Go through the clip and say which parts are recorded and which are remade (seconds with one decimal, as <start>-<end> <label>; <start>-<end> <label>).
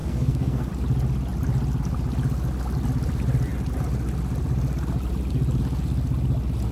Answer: 0.0-0.7 remade; 0.7-6.7 recorded